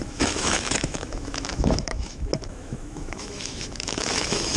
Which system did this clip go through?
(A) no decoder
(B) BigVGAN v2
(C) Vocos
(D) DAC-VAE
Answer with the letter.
D